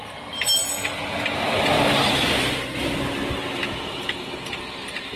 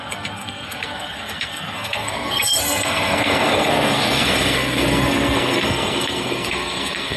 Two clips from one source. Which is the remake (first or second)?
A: second